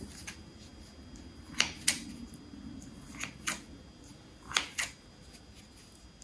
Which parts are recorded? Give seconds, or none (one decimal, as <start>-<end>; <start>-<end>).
0.0-6.2